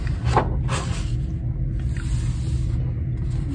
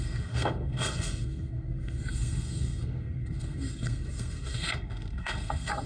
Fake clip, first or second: second